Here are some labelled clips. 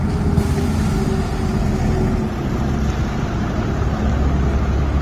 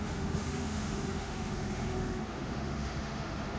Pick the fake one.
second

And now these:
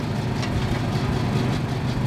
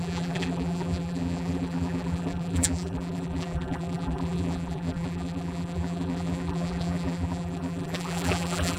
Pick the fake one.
second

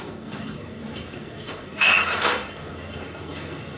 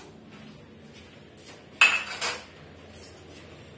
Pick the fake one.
first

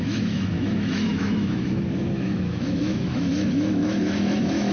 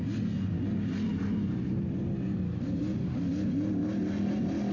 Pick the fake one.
first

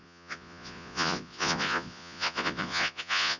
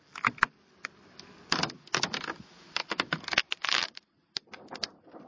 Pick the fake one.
first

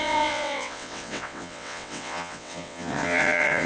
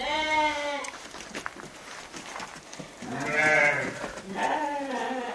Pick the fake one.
first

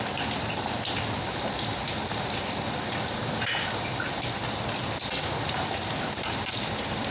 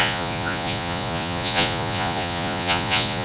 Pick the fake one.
second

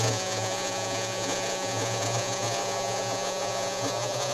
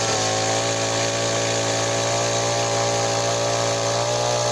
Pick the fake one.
first